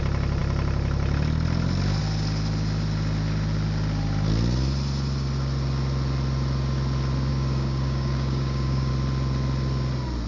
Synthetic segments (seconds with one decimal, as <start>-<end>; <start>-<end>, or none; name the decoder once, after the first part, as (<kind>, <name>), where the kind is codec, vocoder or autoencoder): 7.3-8.9 (codec, DAC)